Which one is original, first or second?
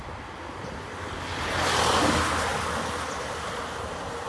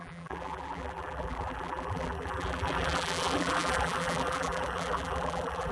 first